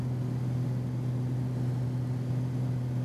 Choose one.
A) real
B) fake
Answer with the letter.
A